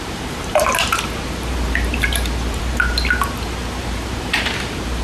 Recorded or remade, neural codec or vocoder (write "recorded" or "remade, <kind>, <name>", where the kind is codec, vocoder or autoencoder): remade, vocoder, BigVGAN v2